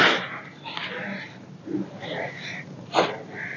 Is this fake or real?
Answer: real